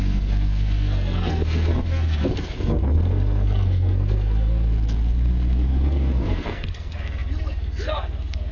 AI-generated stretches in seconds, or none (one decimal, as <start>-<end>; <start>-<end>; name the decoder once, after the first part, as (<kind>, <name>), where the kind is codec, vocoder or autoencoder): 0.0-8.5 (codec, SNAC)